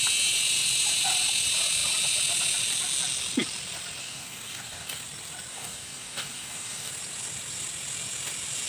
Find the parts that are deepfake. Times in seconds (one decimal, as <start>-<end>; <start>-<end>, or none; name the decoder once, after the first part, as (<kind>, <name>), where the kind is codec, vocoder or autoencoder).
4.0-5.0 (codec, DAC); 5.5-6.9